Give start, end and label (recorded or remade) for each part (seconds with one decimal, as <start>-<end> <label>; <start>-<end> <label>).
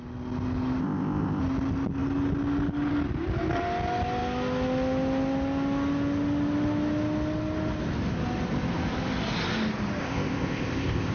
0.0-0.8 recorded; 0.8-1.4 remade; 1.4-10.0 recorded; 10.0-11.1 remade